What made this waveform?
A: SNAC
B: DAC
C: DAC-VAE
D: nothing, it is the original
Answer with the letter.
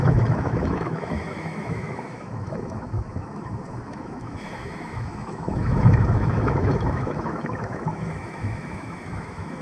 C